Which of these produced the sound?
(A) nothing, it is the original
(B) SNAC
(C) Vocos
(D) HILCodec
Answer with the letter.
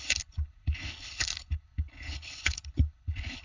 D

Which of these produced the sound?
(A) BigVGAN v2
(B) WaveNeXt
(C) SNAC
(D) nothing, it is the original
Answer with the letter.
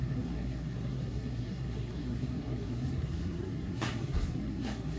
C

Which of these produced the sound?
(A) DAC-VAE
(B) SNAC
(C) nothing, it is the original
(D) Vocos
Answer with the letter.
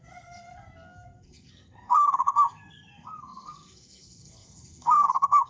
B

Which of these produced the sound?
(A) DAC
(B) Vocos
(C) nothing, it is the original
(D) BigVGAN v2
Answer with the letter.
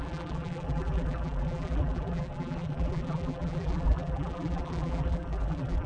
D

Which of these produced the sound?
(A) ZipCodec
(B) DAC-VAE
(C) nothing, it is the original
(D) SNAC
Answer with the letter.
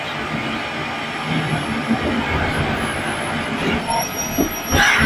C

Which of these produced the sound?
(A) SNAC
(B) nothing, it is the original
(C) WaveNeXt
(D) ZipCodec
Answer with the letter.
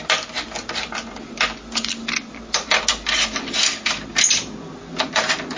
B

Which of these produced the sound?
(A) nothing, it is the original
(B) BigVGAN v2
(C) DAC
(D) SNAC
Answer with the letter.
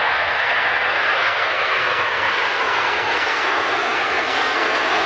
D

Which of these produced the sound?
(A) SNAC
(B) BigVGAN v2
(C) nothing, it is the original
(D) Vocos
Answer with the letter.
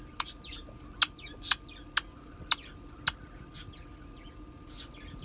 C